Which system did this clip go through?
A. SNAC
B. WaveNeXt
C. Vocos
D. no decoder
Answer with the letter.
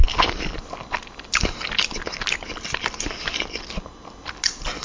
D